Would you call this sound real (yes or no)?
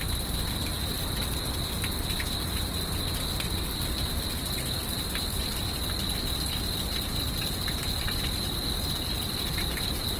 yes